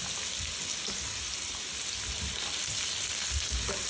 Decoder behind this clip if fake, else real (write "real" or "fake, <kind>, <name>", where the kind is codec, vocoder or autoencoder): real